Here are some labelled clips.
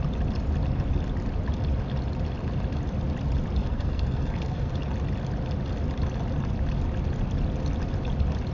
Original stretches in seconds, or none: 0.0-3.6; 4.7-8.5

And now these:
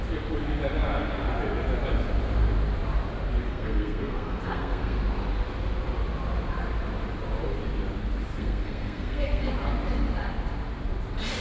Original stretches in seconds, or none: 0.0-3.5; 5.0-8.3; 9.5-11.4

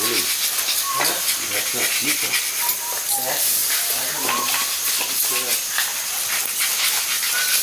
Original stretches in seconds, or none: 0.0-7.6

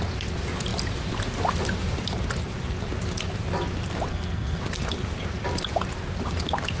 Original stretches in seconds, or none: 0.0-4.1; 4.6-6.8

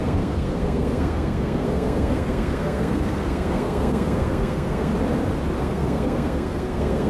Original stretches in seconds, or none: 4.9-5.6